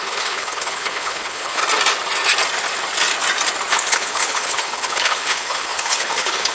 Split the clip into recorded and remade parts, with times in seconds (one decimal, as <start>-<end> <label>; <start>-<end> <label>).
0.0-1.6 remade; 1.6-3.7 recorded; 3.7-6.5 remade

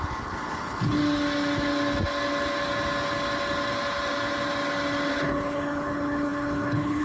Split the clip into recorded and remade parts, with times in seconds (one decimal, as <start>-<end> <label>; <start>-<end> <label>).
0.0-1.0 remade; 1.0-5.1 recorded; 5.1-7.0 remade

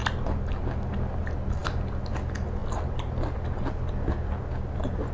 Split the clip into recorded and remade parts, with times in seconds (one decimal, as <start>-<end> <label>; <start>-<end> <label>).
0.0-5.1 recorded

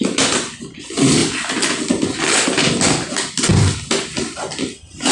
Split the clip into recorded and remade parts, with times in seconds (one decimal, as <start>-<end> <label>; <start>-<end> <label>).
0.0-5.1 recorded

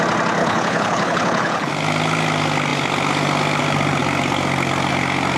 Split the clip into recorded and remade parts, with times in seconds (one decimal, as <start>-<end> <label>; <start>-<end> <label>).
0.0-0.4 recorded; 0.4-1.7 remade; 1.7-5.4 recorded

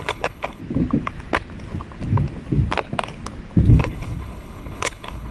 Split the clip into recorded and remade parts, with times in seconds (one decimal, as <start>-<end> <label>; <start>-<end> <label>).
0.0-0.6 remade; 0.6-3.7 recorded; 3.7-5.3 remade

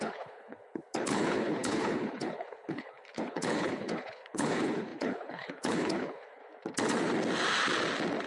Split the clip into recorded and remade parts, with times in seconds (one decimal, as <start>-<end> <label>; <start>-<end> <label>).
0.0-6.4 remade; 6.4-8.3 recorded

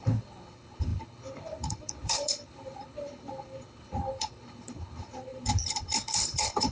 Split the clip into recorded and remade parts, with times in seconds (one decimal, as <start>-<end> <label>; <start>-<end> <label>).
0.0-6.7 remade